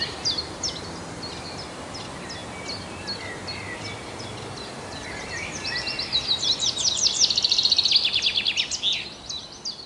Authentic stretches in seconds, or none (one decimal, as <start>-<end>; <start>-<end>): 0.0-9.9